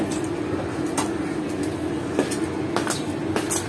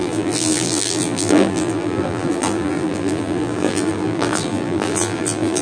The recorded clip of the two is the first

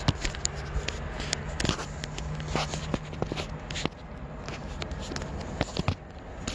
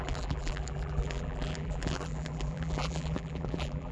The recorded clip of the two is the first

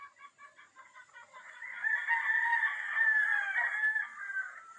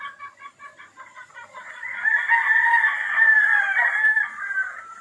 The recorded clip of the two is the first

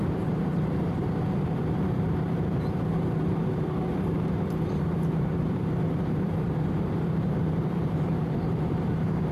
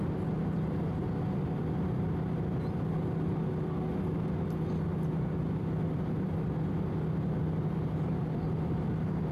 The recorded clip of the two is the second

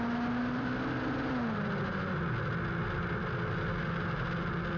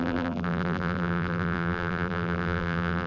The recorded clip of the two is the first